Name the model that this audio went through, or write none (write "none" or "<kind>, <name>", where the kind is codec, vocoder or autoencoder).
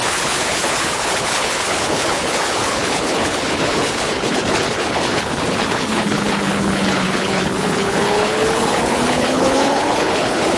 codec, HILCodec